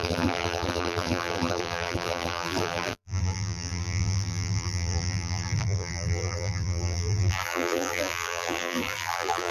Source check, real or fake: fake